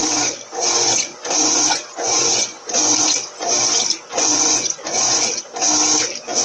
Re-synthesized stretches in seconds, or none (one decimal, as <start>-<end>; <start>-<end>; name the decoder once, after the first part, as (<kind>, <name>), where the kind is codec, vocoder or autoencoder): 0.0-3.5 (vocoder, Vocos); 4.1-5.4